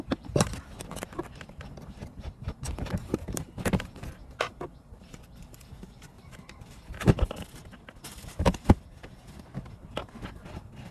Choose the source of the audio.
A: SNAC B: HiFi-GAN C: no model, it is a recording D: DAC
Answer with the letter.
C